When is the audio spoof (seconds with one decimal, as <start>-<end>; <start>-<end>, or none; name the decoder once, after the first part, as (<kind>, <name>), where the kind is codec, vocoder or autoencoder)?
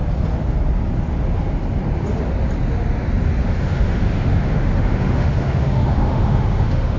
3.4-7.0 (autoencoder, DAC-VAE)